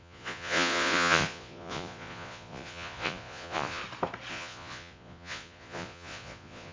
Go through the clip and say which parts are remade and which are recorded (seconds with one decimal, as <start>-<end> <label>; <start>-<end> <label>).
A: 0.0-3.8 remade; 3.8-4.3 recorded; 4.3-6.7 remade